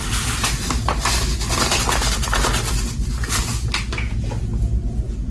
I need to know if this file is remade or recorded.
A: recorded